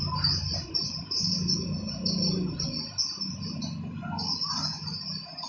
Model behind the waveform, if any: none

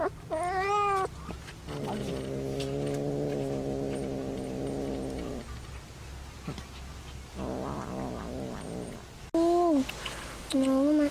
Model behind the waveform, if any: none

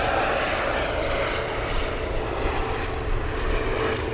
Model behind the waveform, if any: none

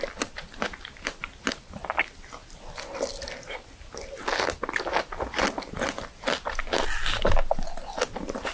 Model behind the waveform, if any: none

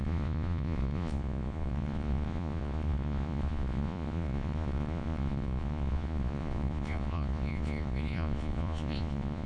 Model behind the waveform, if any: vocoder, Vocos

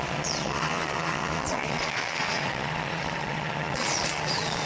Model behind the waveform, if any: vocoder, Vocos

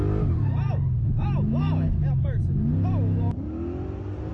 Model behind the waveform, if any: none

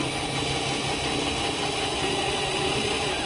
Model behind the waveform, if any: none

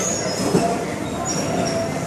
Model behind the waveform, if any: none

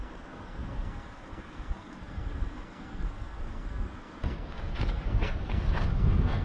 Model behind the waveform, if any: codec, SNAC